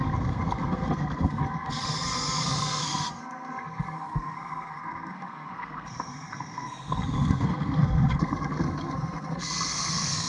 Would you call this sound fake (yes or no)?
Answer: yes